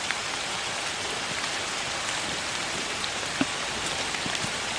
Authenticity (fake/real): real